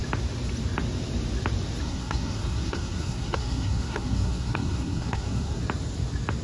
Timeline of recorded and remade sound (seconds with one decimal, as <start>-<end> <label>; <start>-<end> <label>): 0.0-1.8 recorded; 1.8-5.6 remade; 5.6-6.4 recorded

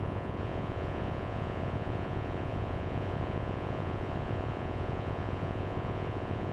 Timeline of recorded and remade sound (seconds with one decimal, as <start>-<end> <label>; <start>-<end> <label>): 0.0-6.5 remade

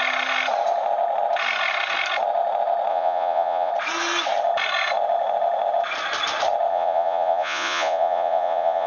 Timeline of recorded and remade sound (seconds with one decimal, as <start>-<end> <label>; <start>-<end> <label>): 0.0-2.9 recorded; 2.9-3.7 remade; 3.7-6.7 recorded; 6.7-8.9 remade